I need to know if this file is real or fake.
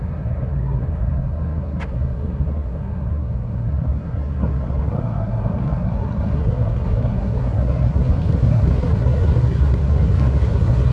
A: fake